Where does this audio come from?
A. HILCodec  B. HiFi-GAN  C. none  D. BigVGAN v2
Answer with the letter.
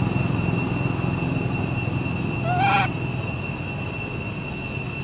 C